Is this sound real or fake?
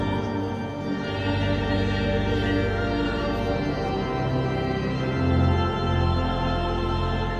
real